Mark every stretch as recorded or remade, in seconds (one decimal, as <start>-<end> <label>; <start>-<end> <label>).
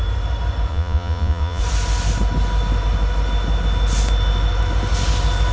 0.0-0.7 recorded; 0.7-1.6 remade; 1.6-5.5 recorded